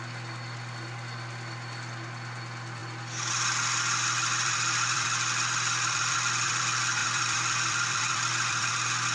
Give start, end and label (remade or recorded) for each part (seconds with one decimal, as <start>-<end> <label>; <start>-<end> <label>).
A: 0.0-2.8 recorded; 2.8-6.6 remade; 6.6-7.0 recorded; 7.0-8.7 remade; 8.7-9.1 recorded